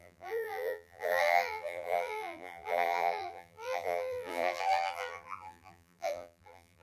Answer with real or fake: fake